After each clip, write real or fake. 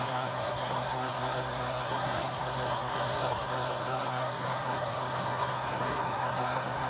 fake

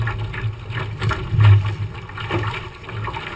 real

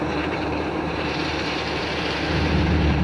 fake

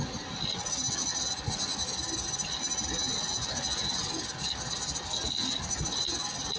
real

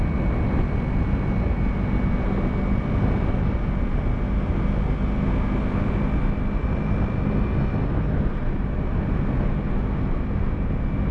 real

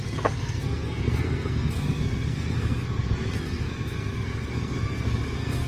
fake